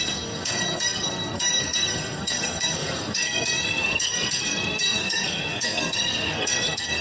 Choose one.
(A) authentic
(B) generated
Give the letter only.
B